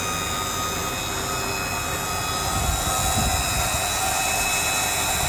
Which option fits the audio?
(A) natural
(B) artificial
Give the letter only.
A